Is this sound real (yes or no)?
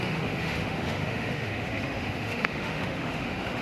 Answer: no